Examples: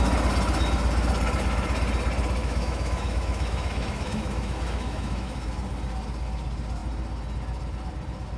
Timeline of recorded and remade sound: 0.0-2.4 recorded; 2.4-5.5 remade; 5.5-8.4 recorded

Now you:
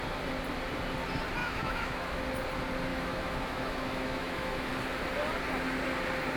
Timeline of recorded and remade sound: 0.0-1.4 recorded; 1.4-2.2 remade; 2.2-2.9 recorded; 2.9-4.7 remade; 4.7-6.4 recorded

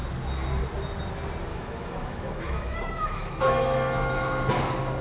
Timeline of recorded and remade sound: 0.0-1.5 recorded; 1.5-4.5 remade; 4.5-5.0 recorded

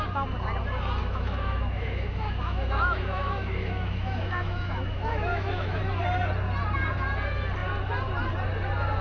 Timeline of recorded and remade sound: 0.0-1.0 recorded; 1.0-5.8 remade; 5.8-9.0 recorded

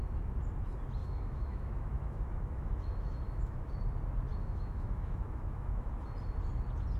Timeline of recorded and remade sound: 0.0-1.0 recorded; 1.0-3.7 remade; 3.7-4.3 recorded; 4.3-5.9 remade; 5.9-7.0 recorded